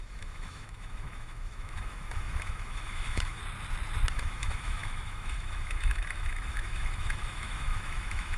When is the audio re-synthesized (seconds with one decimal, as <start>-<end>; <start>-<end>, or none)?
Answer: 0.0-3.4; 4.1-8.4